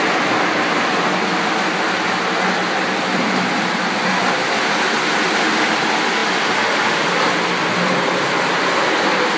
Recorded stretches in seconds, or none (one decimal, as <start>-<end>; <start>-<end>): 0.0-9.4